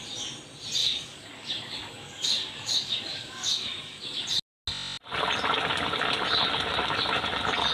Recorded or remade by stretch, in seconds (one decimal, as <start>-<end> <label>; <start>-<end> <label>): 0.0-0.8 recorded; 0.8-4.0 remade; 4.0-7.7 recorded